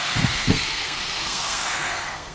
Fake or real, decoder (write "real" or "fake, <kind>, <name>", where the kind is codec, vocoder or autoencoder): fake, codec, SNAC